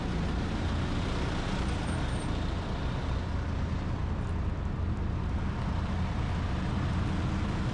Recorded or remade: recorded